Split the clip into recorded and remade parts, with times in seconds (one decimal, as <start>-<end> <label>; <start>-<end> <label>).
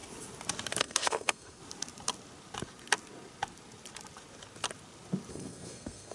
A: 0.0-0.8 recorded; 0.8-1.6 remade; 1.6-5.3 recorded; 5.3-6.1 remade